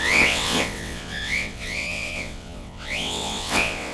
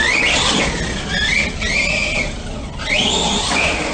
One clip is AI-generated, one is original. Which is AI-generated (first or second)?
first